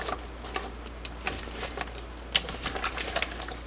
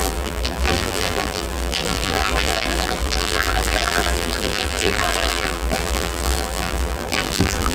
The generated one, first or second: second